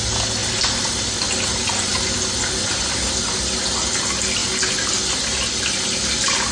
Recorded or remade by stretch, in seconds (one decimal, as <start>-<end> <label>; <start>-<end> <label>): 0.0-6.5 recorded